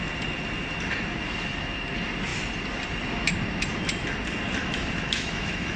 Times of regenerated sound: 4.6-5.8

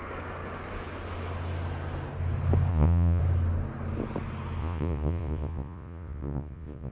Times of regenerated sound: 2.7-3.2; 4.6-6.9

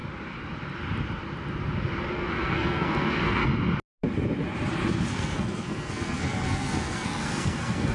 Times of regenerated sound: 2.1-3.4; 5.1-7.9